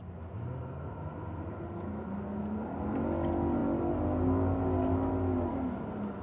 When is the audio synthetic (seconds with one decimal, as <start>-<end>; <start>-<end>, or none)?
none